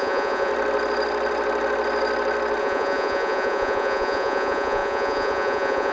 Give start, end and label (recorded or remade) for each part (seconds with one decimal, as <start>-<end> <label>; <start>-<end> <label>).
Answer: 0.0-0.5 remade; 0.5-2.6 recorded; 2.6-5.9 remade